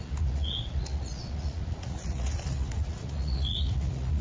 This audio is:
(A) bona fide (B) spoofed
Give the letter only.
B